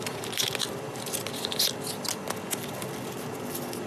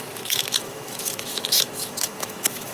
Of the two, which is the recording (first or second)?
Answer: first